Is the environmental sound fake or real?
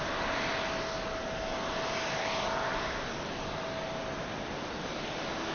real